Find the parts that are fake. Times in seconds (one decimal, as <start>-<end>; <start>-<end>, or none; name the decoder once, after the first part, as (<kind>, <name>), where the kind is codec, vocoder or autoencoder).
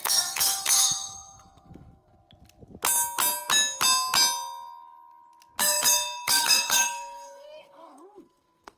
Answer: 0.0-2.1 (codec, SNAC); 5.6-8.8